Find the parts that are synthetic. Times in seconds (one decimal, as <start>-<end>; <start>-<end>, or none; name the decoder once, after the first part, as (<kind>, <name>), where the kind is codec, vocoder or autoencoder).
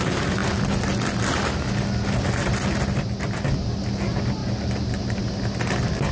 4.4-5.2 (vocoder, BigVGAN v2)